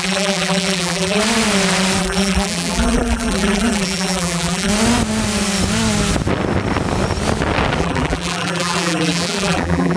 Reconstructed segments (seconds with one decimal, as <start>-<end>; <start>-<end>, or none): 0.0-1.2; 2.0-4.7; 7.8-10.0

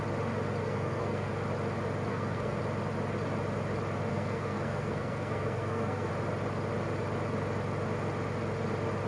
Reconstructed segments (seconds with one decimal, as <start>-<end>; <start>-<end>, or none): 0.6-1.3; 2.1-2.6; 4.1-6.1